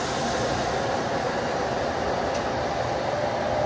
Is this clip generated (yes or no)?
no